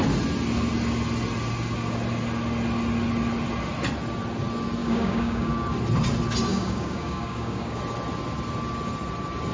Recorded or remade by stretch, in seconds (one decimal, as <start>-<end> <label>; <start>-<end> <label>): 0.0-4.8 recorded; 4.8-5.5 remade; 5.5-6.5 recorded; 6.5-7.8 remade; 7.8-9.5 recorded